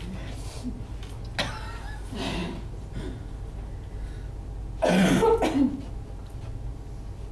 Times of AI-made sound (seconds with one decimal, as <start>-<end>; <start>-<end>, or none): none